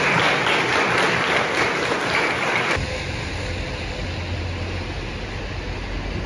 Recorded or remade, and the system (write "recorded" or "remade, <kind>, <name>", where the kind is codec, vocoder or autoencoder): recorded